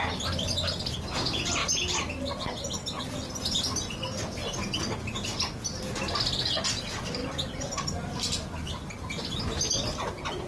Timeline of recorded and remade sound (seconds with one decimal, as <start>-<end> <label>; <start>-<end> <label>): 0.0-4.4 recorded; 4.4-6.2 remade; 6.2-7.2 recorded; 7.2-9.4 remade; 9.4-10.5 recorded